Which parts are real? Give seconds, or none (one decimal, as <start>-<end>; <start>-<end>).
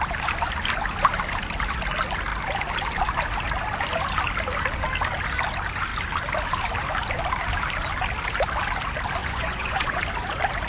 0.0-9.2; 10.0-10.7